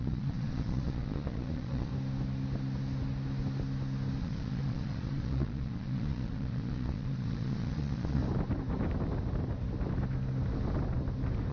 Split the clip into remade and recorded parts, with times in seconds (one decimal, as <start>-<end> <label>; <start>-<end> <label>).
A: 0.0-1.9 remade; 1.9-4.2 recorded; 4.2-8.2 remade; 8.2-11.5 recorded